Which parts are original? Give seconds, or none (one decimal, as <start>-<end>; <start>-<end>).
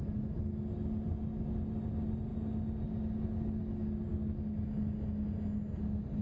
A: 0.0-6.2